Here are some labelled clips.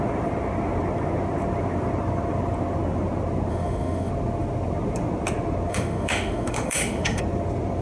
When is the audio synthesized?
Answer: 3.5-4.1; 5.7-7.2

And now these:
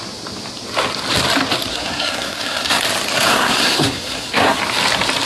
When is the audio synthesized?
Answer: 1.7-2.8; 3.3-4.6